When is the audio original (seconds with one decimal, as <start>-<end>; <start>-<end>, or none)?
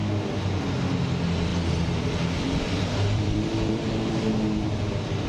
0.0-1.5; 4.3-5.3